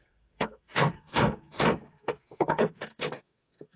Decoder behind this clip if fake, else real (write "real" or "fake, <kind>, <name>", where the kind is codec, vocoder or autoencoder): fake, codec, SNAC